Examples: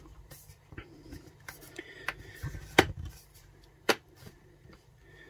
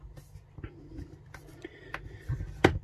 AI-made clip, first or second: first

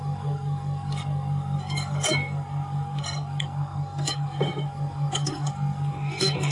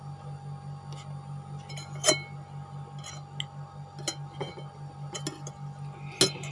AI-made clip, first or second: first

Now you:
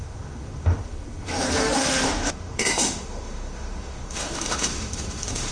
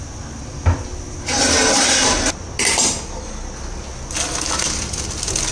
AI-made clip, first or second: first